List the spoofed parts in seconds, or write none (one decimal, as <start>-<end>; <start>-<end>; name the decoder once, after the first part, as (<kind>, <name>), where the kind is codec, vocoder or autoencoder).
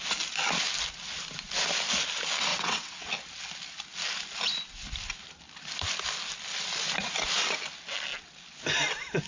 2.5-3.1 (vocoder, WaveNeXt)